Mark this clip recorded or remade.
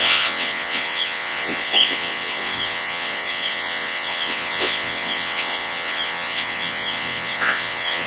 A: remade